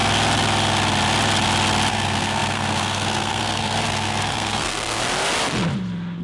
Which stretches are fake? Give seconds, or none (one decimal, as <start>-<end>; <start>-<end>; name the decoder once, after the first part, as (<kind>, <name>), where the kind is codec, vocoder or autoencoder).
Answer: 1.9-5.0 (codec, SNAC)